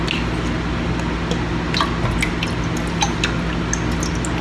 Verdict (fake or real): real